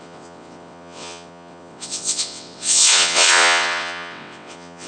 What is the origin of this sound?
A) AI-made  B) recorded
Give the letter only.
A